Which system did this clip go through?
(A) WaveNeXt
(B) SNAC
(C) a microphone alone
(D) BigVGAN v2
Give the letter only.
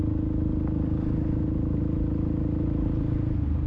C